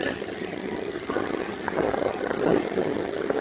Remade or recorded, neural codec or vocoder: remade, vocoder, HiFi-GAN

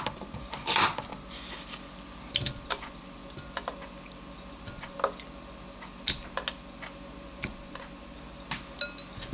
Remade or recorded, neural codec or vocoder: recorded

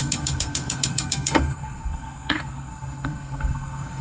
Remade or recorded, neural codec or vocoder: remade, codec, SNAC